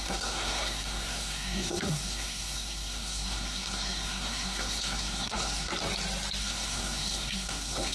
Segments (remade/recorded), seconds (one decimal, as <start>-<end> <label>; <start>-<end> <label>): 0.0-5.7 remade; 5.7-6.4 recorded; 6.4-7.9 remade